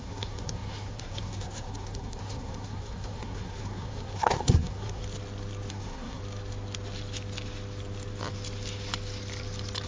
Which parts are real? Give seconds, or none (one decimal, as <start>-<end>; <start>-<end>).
5.0-5.7; 6.2-9.9